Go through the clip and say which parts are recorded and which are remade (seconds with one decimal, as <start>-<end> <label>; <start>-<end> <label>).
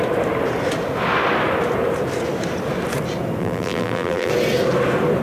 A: 0.0-3.4 recorded; 3.4-4.3 remade; 4.3-5.2 recorded